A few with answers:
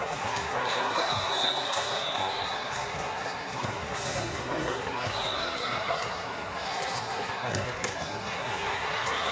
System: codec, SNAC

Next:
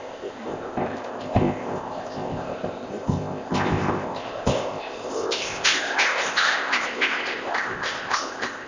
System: codec, ZipCodec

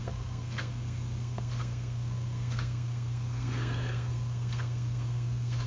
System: codec, SNAC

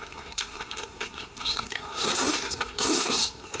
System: codec, SNAC